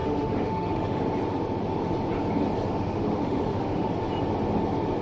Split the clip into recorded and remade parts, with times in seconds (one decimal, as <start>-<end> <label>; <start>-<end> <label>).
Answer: 0.0-1.0 remade; 1.0-2.7 recorded; 2.7-3.9 remade; 3.9-5.0 recorded